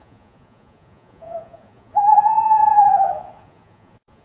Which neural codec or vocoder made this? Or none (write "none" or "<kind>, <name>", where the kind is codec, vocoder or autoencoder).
vocoder, Vocos